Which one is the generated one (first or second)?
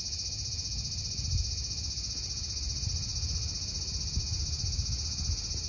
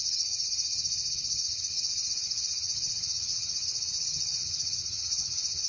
second